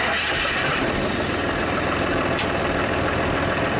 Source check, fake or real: fake